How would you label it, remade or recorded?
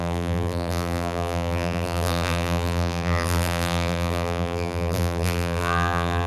remade